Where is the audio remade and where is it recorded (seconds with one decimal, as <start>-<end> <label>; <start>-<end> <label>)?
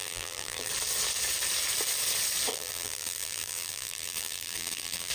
0.0-0.7 remade; 0.7-2.5 recorded; 2.5-5.1 remade